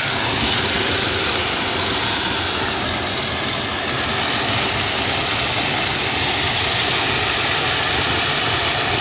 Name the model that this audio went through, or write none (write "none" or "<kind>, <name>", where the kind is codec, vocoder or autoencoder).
none